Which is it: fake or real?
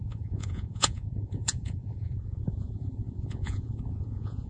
fake